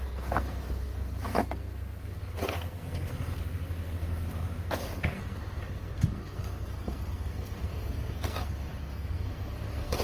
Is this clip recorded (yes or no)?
no